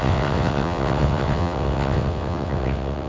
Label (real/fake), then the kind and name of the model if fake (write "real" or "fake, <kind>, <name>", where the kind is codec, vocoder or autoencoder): fake, vocoder, WaveNeXt